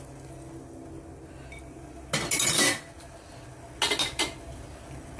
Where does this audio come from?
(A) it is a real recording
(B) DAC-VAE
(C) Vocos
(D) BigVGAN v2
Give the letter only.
A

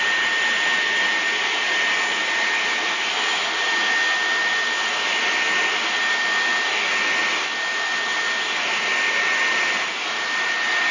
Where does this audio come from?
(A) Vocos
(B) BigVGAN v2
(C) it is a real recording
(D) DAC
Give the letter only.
C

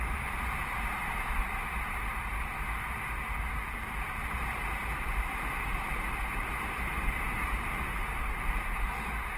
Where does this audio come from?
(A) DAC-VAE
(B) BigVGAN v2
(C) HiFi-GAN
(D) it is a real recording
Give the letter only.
B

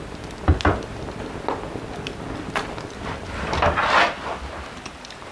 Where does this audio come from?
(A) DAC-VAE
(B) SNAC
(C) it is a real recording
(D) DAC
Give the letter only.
C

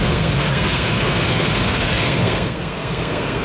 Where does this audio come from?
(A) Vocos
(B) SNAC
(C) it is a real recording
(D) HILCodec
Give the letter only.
B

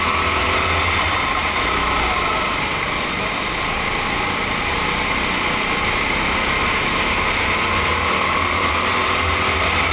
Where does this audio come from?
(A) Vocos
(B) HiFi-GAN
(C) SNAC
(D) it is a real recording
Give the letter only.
D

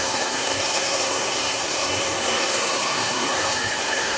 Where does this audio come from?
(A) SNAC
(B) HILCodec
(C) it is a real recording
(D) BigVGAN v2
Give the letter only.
A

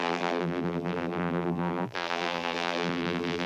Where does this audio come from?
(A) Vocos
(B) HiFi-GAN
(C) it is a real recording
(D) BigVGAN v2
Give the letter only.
D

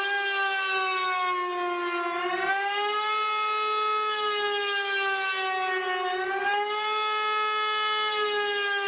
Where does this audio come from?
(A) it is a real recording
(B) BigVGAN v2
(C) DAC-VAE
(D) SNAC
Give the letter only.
A